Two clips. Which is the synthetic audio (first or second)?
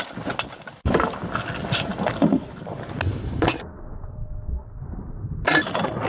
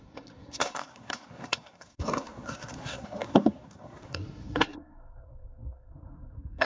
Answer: second